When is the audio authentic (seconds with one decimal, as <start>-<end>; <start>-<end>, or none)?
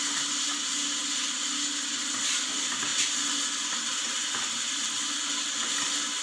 0.0-6.2